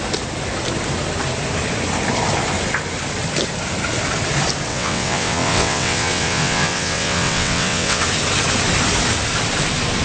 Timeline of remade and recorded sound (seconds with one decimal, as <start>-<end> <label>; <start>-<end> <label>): 0.0-4.7 recorded; 4.7-8.0 remade; 8.0-10.0 recorded